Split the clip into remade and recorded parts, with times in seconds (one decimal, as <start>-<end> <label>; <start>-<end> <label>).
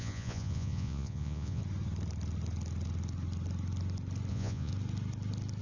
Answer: 0.0-1.6 remade; 1.6-4.3 recorded; 4.3-4.7 remade; 4.7-5.6 recorded